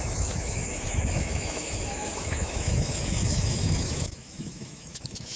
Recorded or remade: remade